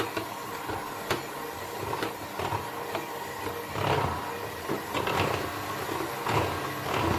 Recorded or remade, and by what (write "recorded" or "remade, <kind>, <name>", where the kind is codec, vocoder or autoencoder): recorded